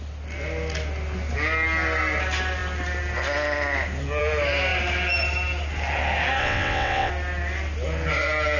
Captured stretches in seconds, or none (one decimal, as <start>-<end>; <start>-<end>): 0.0-6.4; 7.1-8.6